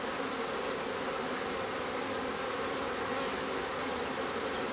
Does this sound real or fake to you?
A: real